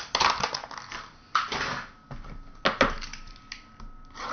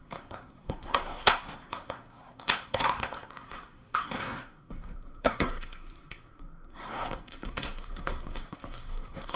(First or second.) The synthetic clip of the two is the second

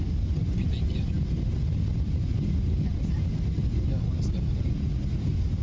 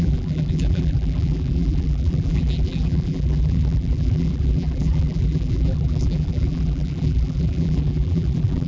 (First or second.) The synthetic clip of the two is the second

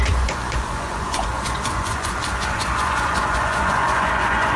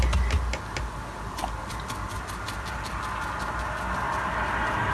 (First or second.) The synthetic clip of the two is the first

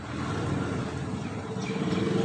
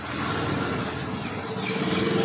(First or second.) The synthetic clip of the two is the first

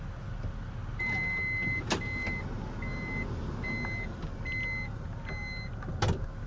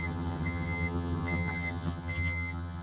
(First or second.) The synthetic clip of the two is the second